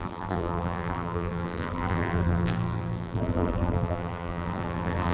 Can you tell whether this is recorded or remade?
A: remade